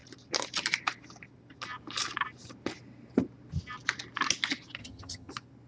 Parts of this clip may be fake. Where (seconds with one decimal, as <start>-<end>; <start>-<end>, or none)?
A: 4.8-5.3